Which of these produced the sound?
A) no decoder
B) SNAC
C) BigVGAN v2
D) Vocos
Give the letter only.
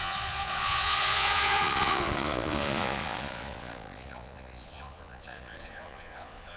D